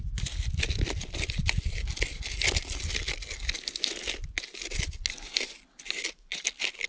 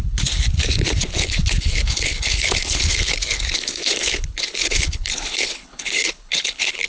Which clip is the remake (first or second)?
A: second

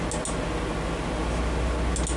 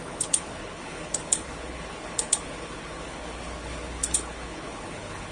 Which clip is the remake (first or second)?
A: second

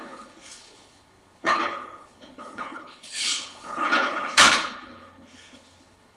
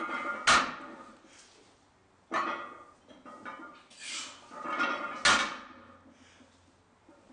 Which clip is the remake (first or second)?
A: first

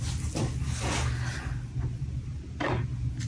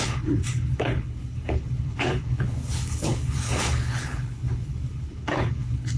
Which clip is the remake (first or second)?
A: second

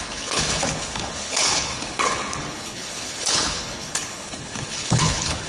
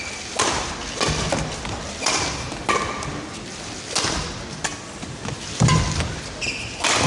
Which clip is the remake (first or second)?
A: first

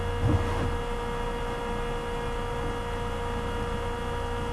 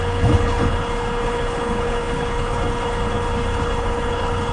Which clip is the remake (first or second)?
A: second